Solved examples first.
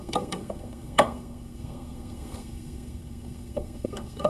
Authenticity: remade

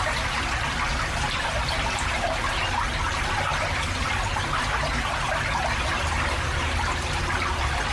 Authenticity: recorded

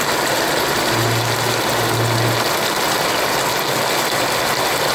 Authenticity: recorded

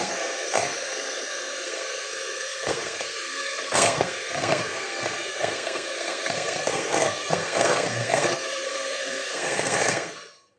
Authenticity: remade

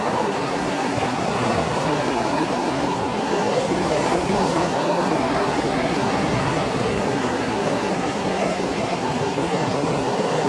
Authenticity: remade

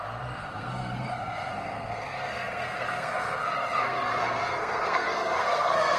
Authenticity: remade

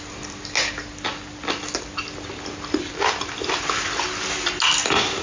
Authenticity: recorded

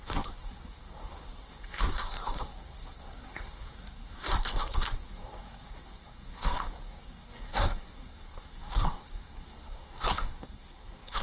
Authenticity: remade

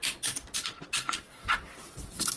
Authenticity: recorded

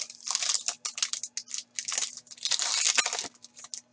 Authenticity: recorded